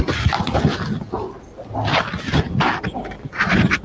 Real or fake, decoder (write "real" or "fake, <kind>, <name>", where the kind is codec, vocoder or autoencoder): fake, vocoder, BigVGAN v2